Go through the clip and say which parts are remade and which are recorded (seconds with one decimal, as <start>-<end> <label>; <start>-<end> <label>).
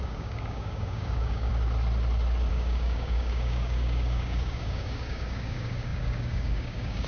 0.0-1.5 remade; 1.5-2.5 recorded; 2.5-7.1 remade